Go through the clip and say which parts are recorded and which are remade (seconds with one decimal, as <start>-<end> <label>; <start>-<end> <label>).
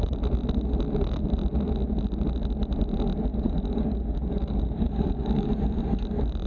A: 0.0-3.3 recorded; 3.3-5.5 remade; 5.5-6.5 recorded